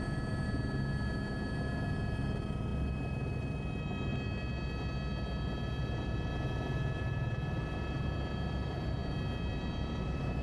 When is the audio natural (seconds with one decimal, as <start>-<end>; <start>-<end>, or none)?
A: 0.0-10.4